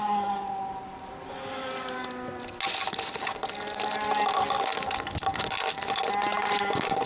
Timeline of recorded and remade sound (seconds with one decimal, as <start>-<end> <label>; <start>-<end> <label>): 0.0-7.1 recorded